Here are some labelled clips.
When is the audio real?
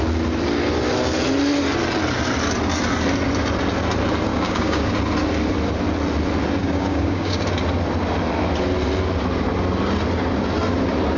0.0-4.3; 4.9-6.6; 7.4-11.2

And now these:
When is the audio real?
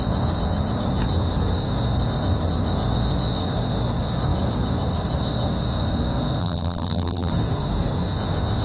0.0-6.4; 7.3-8.6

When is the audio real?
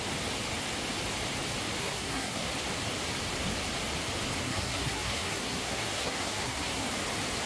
0.0-1.8; 2.5-4.4; 6.9-7.5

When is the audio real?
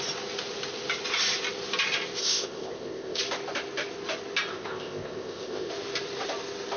0.0-2.2; 3.2-4.5; 5.7-6.8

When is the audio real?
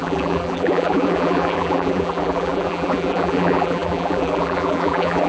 none